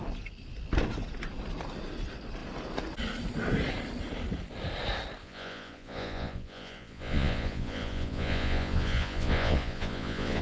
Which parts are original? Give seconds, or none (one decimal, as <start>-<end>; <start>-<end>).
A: 0.0-5.2